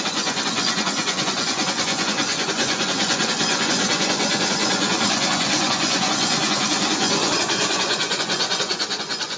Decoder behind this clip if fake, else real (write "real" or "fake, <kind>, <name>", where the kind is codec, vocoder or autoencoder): fake, vocoder, Vocos